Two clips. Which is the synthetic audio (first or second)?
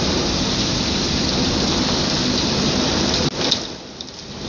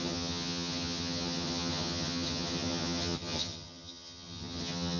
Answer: second